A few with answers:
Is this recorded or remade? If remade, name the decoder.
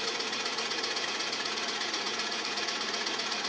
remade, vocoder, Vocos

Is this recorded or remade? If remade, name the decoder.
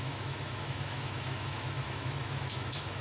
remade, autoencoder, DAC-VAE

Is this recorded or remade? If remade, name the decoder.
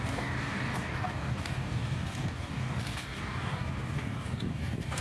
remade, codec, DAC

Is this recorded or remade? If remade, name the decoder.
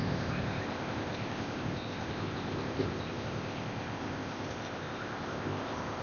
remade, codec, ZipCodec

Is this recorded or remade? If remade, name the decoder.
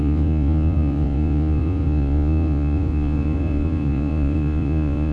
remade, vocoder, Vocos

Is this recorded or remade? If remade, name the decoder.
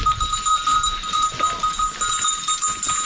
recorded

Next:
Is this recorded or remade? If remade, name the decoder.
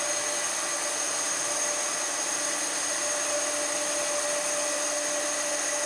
recorded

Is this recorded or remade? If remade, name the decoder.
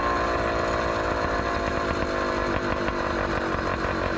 recorded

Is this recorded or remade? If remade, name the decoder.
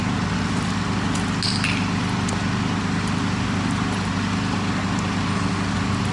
recorded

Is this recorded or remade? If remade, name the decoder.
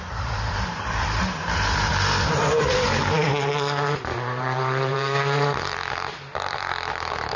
remade, vocoder, BigVGAN v2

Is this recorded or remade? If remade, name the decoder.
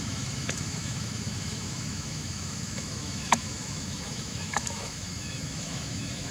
remade, autoencoder, DAC-VAE